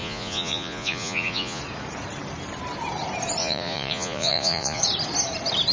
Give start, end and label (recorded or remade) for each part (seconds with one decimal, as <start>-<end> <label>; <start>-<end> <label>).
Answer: 0.0-1.6 remade; 1.6-3.4 recorded; 3.4-4.8 remade; 4.8-5.7 recorded